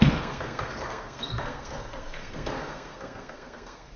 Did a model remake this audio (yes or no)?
yes